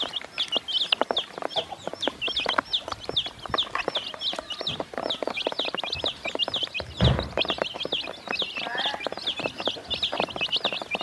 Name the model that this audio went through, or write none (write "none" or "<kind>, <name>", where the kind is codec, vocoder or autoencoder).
none